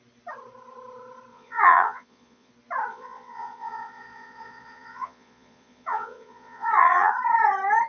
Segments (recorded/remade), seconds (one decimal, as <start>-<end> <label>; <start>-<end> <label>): 0.0-1.3 recorded; 1.3-2.5 remade; 2.5-2.9 recorded; 2.9-7.1 remade; 7.1-7.9 recorded